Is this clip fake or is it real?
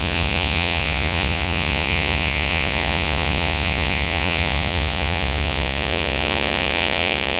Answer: fake